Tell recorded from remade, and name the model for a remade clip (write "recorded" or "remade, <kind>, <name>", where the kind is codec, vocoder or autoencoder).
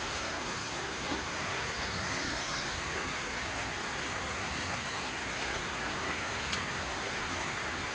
remade, codec, SNAC